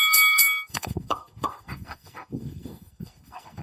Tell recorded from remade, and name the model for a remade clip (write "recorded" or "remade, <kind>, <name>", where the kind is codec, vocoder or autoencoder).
remade, codec, SNAC